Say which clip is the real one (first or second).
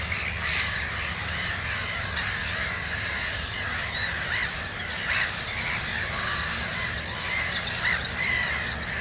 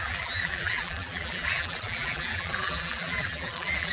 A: first